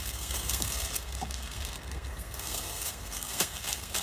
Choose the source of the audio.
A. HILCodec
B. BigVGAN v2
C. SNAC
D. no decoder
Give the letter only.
C